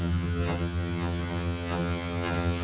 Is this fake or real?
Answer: fake